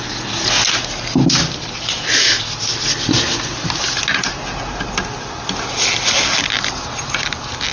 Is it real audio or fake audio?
real